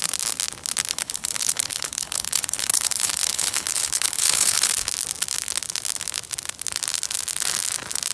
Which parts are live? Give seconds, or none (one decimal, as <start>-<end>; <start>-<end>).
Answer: 0.0-0.9; 4.7-8.1